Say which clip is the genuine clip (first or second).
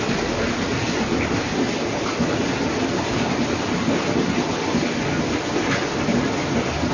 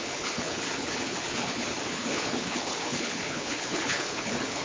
first